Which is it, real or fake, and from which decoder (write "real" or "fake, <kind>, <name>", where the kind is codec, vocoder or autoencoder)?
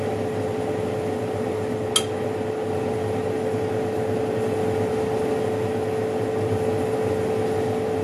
real